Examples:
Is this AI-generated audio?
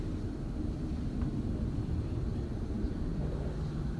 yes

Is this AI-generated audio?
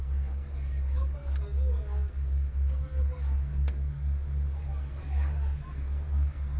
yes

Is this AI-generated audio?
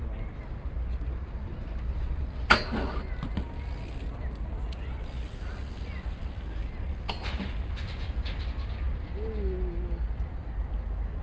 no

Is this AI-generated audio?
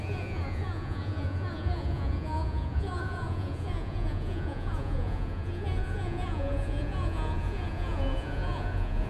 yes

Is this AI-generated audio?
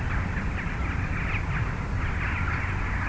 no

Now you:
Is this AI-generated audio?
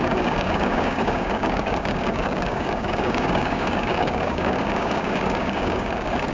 yes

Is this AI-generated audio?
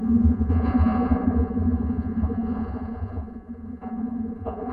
yes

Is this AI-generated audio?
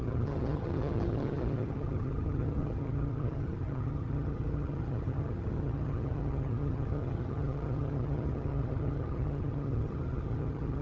yes